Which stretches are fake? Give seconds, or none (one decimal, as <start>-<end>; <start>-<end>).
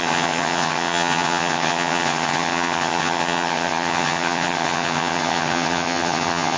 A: 0.0-6.6